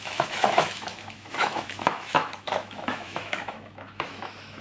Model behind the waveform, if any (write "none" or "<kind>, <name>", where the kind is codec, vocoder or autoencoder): autoencoder, DAC-VAE